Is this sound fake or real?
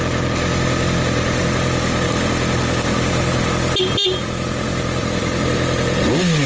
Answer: real